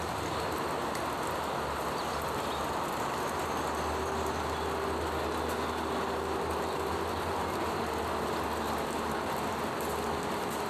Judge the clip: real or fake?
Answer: real